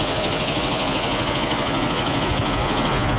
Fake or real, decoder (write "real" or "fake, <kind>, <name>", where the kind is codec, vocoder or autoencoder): fake, vocoder, Vocos